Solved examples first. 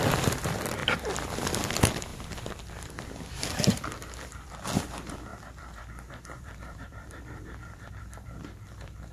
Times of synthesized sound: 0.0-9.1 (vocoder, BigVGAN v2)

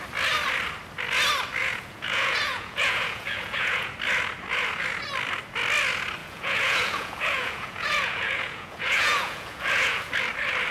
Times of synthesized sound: 1.6-3.9 (vocoder, Vocos); 6.2-10.1

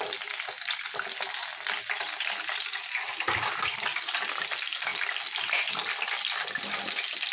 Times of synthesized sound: 1.5-2.6 (vocoder, BigVGAN v2)

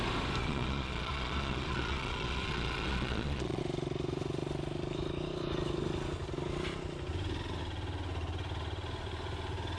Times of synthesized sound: 0.4-3.6 (vocoder, Vocos)

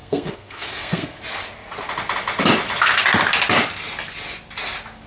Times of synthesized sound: 0.0-1.2 (codec, SNAC)

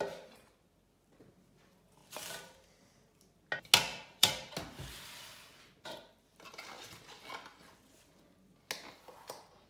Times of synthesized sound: 2.0-2.8 (vocoder, BigVGAN v2); 3.9-4.5

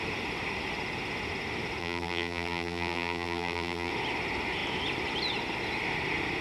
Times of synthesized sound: 1.8-3.9 (vocoder, BigVGAN v2)